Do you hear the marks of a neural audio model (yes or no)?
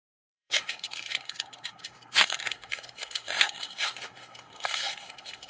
yes